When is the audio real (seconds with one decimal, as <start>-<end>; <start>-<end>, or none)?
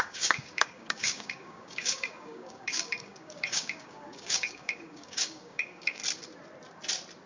6.0-7.3